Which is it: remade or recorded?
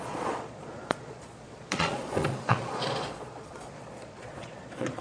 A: remade